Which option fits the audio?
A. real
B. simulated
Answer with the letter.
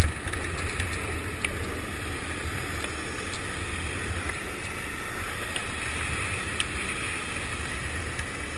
A